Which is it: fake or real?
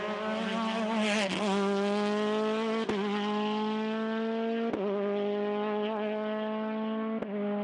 real